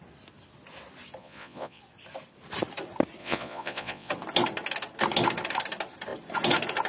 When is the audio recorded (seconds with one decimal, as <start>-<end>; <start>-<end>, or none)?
0.0-1.2; 1.8-3.2; 4.1-6.9